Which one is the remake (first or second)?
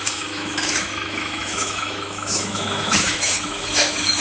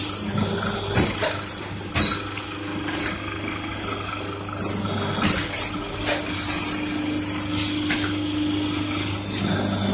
first